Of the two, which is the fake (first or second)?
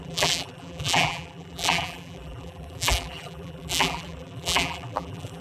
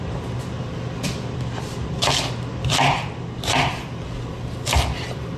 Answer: first